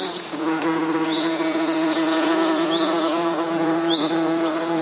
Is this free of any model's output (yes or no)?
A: no